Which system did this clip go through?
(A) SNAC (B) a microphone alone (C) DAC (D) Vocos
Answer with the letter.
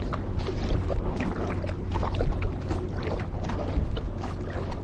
B